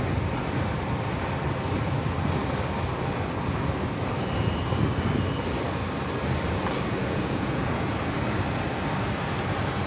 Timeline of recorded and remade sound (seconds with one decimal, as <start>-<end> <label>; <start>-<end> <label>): 0.0-7.0 recorded; 7.0-8.0 remade; 8.0-9.9 recorded